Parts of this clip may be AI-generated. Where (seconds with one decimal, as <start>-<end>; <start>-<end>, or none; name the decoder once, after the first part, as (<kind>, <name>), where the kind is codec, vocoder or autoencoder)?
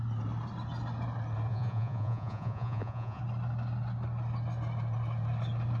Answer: 1.5-3.2 (vocoder, Vocos)